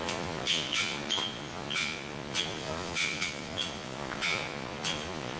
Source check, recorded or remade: remade